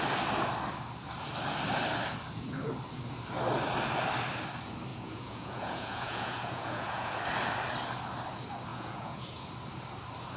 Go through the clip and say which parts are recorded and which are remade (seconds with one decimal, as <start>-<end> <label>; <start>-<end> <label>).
0.0-4.9 recorded; 4.9-7.2 remade; 7.2-8.7 recorded; 8.7-9.5 remade; 9.5-10.4 recorded